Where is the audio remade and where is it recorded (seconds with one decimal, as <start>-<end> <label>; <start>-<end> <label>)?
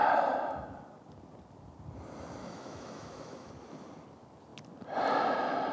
0.0-2.4 recorded; 2.4-3.5 remade; 3.5-5.7 recorded